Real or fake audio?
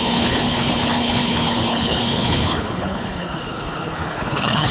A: fake